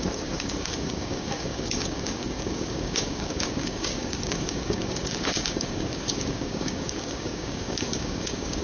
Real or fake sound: fake